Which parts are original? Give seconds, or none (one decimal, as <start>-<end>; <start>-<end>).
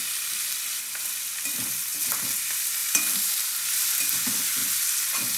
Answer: 0.0-1.9; 2.4-2.8; 3.5-5.4